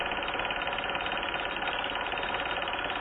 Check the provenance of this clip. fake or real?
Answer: real